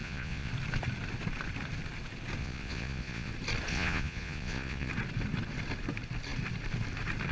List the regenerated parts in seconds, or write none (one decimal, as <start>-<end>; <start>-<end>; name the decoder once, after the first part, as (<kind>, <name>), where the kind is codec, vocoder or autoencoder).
0.0-0.5 (vocoder, Vocos); 2.4-3.3; 3.7-4.9